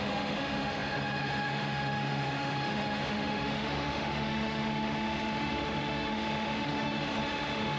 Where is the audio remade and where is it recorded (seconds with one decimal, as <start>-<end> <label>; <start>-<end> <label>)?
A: 0.0-7.8 remade